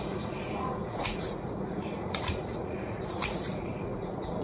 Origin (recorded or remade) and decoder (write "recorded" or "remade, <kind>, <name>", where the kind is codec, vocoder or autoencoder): remade, vocoder, Vocos